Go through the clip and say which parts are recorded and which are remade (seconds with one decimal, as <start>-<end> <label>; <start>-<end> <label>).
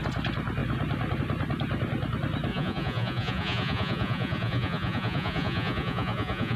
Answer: 0.0-2.5 recorded; 2.5-6.6 remade